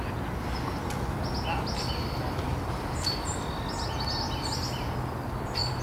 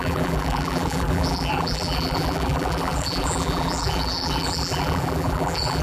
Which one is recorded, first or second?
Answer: first